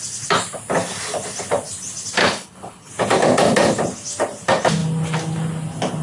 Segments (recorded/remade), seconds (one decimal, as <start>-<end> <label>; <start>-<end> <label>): 0.0-2.2 recorded; 2.2-2.9 remade; 2.9-6.0 recorded